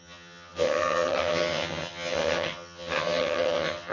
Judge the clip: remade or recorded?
remade